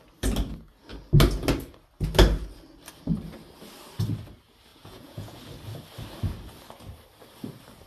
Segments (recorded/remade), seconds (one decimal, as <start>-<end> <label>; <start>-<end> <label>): 0.0-4.7 recorded; 4.7-5.4 remade; 5.4-7.9 recorded